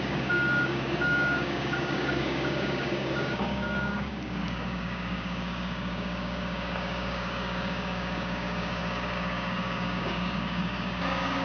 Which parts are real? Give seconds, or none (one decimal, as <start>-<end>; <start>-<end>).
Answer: none